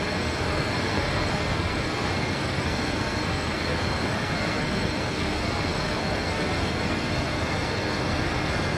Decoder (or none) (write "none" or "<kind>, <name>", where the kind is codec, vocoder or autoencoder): codec, SNAC